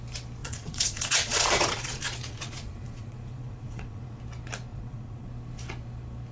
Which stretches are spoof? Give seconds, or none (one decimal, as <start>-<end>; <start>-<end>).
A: 0.4-4.2; 4.7-5.3